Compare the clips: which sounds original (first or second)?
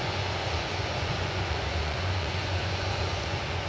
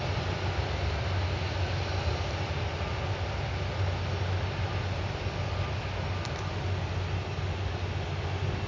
second